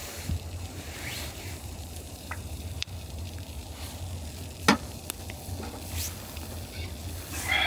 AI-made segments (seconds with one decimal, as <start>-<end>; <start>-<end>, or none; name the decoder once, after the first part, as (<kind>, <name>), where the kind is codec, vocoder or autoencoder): 0.0-4.0 (vocoder, BigVGAN v2)